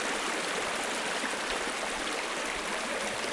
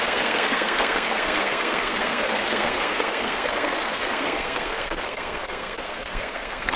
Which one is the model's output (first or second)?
second